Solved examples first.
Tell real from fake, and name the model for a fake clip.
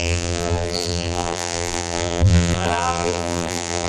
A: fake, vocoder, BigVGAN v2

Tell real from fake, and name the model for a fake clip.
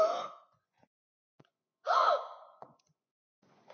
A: fake, vocoder, Vocos